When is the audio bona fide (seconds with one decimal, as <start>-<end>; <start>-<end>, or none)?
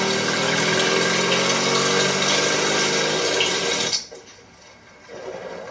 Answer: 0.0-5.1